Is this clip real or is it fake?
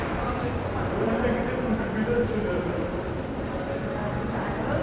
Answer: real